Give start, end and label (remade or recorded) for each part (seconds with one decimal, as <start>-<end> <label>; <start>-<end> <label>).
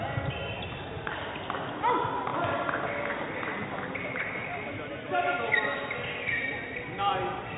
0.0-7.6 recorded